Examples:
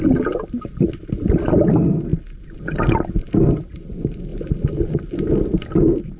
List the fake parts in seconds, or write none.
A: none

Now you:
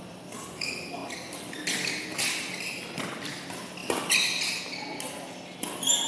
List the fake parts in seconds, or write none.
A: none